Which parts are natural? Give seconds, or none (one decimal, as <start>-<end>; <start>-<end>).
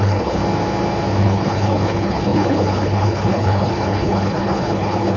0.4-1.2